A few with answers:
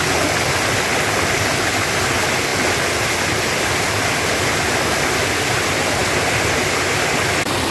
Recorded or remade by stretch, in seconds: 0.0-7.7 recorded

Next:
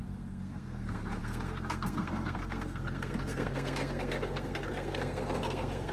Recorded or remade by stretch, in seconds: 0.0-5.9 remade

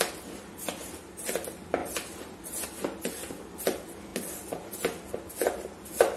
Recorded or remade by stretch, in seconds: 0.0-6.2 recorded

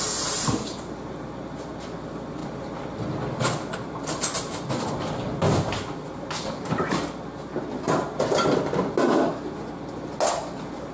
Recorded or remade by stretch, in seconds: 0.0-10.9 recorded

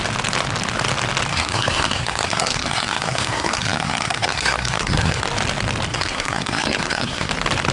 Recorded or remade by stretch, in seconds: 0.0-1.3 recorded; 1.3-5.2 remade; 5.2-5.9 recorded; 5.9-7.3 remade; 7.3-7.7 recorded

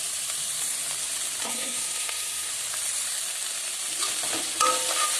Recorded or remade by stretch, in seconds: 0.0-1.4 recorded; 1.4-2.5 remade; 2.5-5.2 recorded